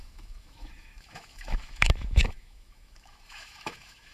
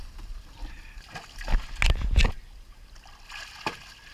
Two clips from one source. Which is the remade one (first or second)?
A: first